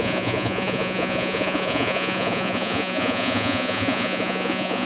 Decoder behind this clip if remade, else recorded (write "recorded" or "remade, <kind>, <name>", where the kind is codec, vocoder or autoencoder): remade, vocoder, Vocos